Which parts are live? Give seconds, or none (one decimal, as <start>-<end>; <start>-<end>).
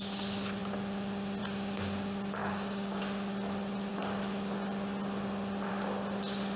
0.0-2.4; 3.0-6.6